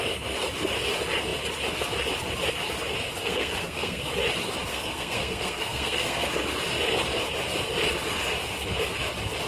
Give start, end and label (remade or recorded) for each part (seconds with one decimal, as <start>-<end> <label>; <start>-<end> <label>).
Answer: 0.0-3.2 recorded; 3.2-4.1 remade; 4.1-4.7 recorded; 4.7-6.3 remade; 6.3-9.5 recorded